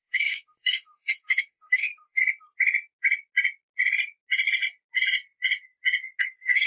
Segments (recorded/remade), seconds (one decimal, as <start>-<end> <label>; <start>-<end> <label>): 0.0-2.2 remade; 2.2-6.2 recorded; 6.2-6.7 remade